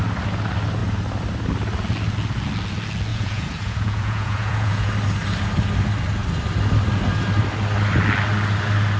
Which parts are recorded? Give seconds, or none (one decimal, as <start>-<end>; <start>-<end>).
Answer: 0.0-3.1; 4.9-9.0

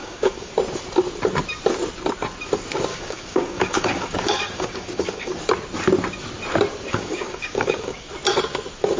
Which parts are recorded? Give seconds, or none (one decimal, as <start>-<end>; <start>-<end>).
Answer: 0.5-2.9; 5.3-6.9; 8.1-9.0

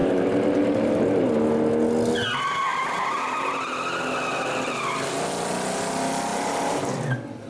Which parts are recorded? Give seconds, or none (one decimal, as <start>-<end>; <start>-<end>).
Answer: 1.3-6.3; 6.8-7.5

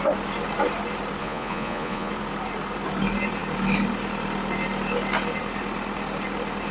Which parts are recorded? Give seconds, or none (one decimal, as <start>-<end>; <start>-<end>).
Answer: 0.0-1.2; 2.1-6.7